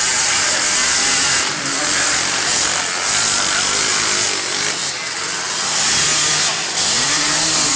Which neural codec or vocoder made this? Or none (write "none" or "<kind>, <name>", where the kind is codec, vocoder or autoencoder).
none